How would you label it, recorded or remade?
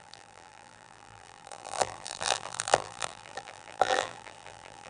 remade